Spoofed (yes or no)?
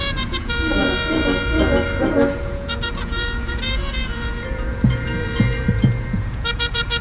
yes